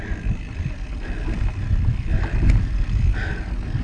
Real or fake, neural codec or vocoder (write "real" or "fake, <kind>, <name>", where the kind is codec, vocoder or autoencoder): real